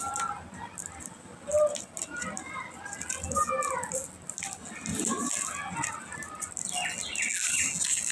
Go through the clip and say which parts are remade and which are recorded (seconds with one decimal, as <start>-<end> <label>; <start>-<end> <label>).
0.0-8.1 recorded